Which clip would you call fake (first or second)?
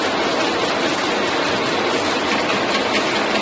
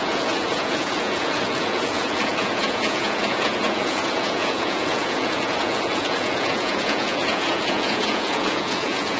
second